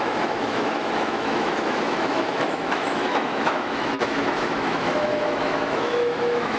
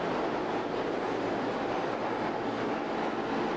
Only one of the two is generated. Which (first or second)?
first